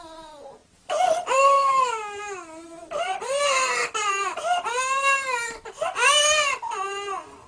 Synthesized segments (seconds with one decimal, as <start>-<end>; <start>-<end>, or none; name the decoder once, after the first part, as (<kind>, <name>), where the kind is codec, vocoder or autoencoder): none